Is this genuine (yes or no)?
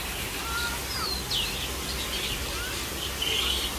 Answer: yes